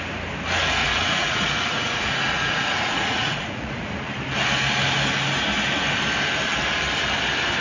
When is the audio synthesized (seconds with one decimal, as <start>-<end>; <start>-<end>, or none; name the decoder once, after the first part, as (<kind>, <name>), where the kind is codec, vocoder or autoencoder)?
0.8-4.0 (vocoder, Vocos)